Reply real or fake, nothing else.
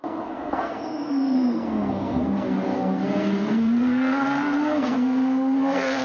fake